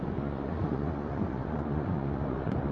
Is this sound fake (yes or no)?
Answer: yes